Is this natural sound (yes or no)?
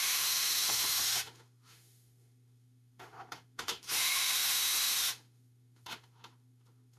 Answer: no